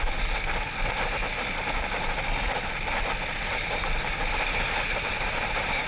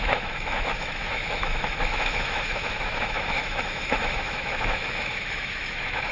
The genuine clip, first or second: first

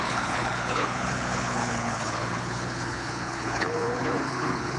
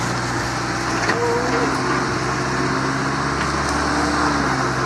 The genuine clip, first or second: second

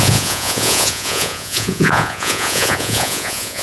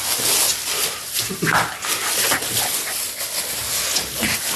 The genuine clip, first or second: second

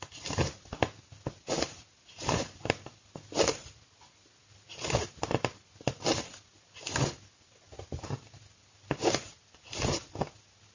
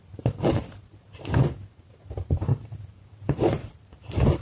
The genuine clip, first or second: first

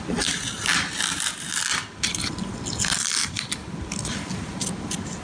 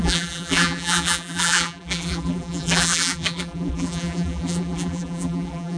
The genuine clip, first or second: first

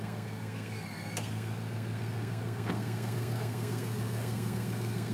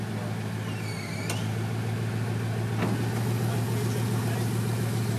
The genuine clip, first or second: second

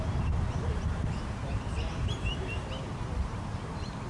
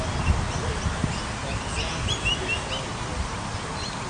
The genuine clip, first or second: second